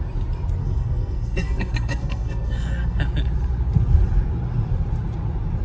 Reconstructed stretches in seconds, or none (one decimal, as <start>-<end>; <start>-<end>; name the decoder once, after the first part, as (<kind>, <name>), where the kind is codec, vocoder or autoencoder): 0.6-3.0 (codec, SNAC)